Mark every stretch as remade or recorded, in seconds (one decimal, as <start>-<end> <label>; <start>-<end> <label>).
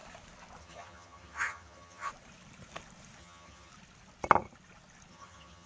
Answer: 0.0-0.6 recorded; 0.6-2.1 remade; 2.1-3.2 recorded; 3.2-3.7 remade; 3.7-5.1 recorded; 5.1-5.7 remade